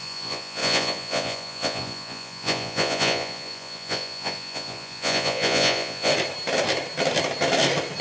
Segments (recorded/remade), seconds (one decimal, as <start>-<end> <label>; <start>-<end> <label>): 0.0-6.1 remade; 6.1-8.0 recorded